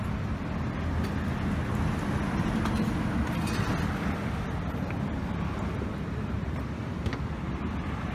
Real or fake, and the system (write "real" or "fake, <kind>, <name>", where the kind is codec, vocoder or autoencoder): real